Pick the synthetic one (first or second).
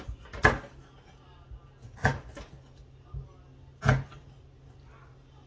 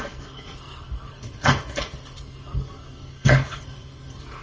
second